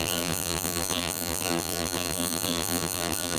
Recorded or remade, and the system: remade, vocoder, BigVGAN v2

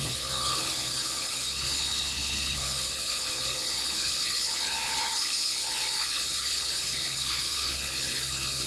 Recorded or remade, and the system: remade, codec, HILCodec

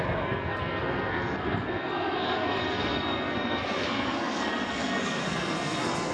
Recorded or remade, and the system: remade, codec, SNAC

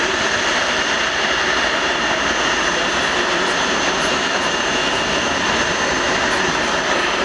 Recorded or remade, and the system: remade, vocoder, BigVGAN v2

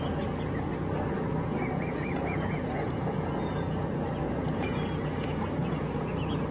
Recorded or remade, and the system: remade, vocoder, Vocos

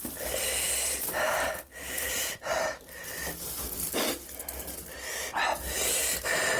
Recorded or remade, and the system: recorded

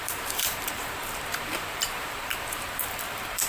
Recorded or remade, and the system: remade, vocoder, BigVGAN v2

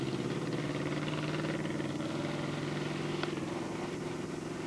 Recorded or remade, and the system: recorded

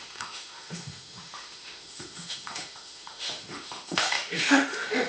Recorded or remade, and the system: remade, autoencoder, DAC-VAE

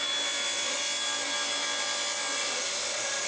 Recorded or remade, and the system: recorded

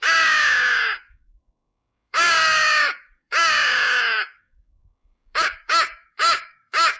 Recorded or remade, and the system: remade, codec, DAC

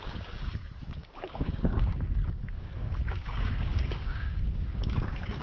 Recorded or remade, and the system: remade, codec, DAC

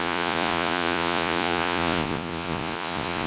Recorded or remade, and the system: remade, vocoder, Vocos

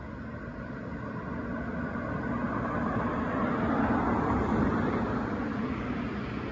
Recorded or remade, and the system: recorded